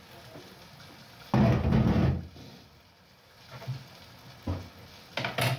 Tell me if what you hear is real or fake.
real